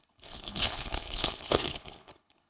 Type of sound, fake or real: fake